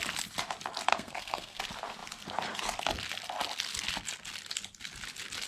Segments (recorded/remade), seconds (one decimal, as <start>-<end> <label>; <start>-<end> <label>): 0.0-0.9 recorded; 0.9-1.6 remade; 1.6-5.5 recorded